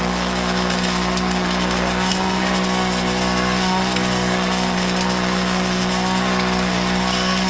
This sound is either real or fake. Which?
fake